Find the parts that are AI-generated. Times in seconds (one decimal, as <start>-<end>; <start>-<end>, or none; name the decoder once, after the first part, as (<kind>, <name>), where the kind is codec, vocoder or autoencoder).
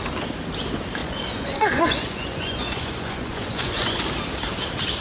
1.0-4.0 (vocoder, Vocos)